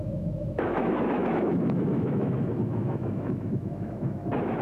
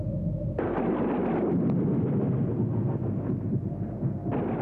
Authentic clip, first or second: second